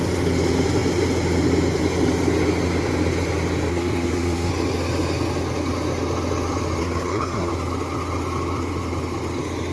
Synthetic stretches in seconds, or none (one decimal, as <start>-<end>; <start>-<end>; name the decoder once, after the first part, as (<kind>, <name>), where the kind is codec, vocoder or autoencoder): 3.7-4.5 (codec, SNAC); 6.8-7.5